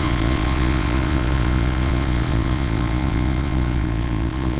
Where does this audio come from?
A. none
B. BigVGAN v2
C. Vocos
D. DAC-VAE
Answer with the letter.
C